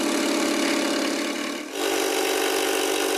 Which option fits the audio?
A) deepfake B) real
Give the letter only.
A